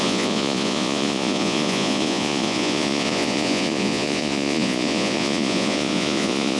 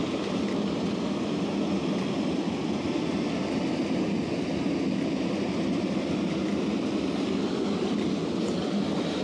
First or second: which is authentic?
second